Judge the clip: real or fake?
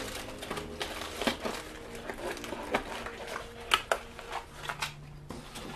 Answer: real